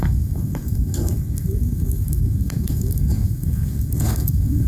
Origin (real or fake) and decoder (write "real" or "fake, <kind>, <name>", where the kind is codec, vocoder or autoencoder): fake, codec, SNAC